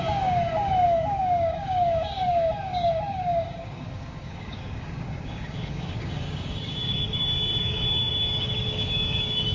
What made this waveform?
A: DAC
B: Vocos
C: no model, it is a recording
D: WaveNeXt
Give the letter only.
A